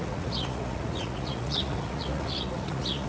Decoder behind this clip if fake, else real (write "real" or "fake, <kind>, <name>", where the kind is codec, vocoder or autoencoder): fake, vocoder, Vocos